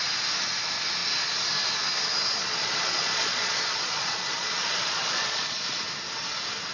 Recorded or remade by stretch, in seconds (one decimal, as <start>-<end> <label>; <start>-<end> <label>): 0.0-2.4 recorded; 2.4-5.8 remade; 5.8-6.7 recorded